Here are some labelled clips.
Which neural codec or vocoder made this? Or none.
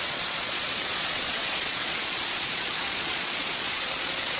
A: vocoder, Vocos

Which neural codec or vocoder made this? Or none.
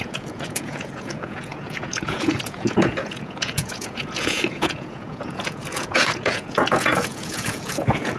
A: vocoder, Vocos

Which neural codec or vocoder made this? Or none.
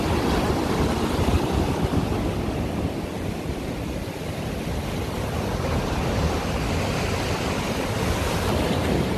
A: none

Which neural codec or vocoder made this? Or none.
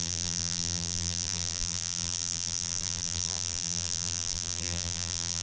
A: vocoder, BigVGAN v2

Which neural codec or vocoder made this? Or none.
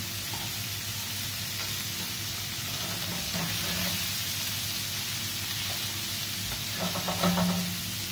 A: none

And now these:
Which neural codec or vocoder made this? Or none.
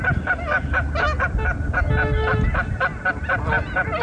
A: none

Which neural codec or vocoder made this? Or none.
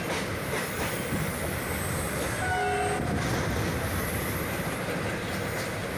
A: none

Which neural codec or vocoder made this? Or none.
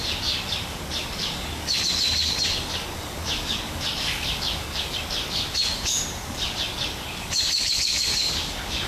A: codec, DAC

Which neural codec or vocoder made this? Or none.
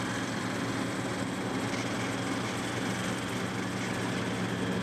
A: none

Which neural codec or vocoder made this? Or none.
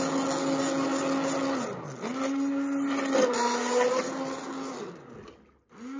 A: none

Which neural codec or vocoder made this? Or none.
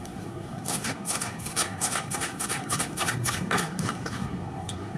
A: codec, SNAC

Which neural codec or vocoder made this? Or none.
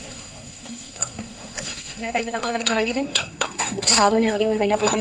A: codec, SNAC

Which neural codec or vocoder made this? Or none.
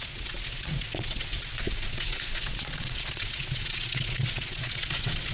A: vocoder, WaveNeXt